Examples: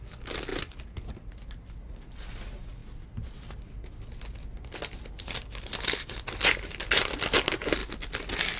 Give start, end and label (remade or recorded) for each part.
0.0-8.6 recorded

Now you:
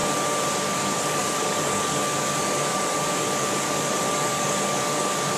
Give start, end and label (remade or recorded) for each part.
0.0-0.6 recorded; 0.6-5.4 remade

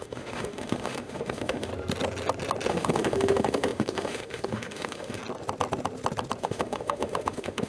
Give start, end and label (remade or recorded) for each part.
0.0-1.7 remade; 1.7-2.7 recorded; 2.7-5.2 remade; 5.2-6.4 recorded; 6.4-7.7 remade

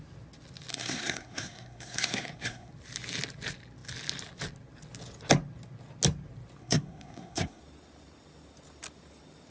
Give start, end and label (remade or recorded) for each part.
0.0-0.7 recorded; 0.7-2.7 remade; 2.7-6.6 recorded; 6.6-7.6 remade; 7.6-9.5 recorded